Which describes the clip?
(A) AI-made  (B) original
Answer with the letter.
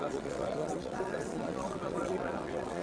A